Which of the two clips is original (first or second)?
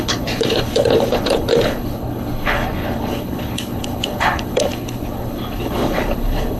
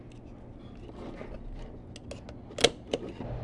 second